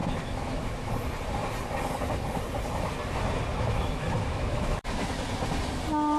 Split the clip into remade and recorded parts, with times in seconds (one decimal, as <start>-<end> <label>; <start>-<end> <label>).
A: 0.0-0.9 remade; 0.9-3.5 recorded; 3.5-5.1 remade; 5.1-6.2 recorded